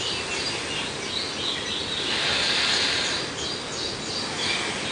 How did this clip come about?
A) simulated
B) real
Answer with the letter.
B